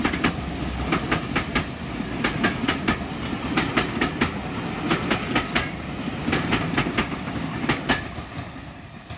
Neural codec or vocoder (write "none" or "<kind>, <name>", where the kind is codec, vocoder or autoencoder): none